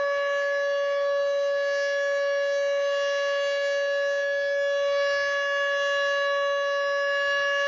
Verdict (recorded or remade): recorded